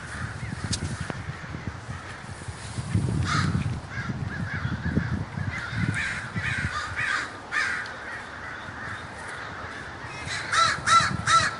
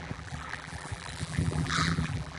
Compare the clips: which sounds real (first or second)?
first